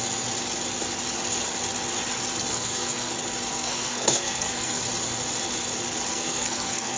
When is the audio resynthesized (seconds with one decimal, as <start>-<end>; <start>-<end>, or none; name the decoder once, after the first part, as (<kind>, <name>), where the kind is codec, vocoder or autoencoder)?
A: 2.5-3.1 (codec, SNAC); 3.5-4.8; 6.1-7.0